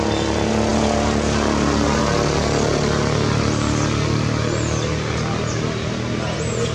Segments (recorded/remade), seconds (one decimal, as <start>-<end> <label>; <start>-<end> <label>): 0.0-6.7 recorded